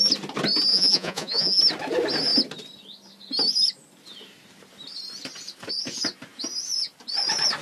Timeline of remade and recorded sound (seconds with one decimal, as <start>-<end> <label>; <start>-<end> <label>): 0.0-0.7 recorded; 0.7-1.6 remade; 1.6-7.6 recorded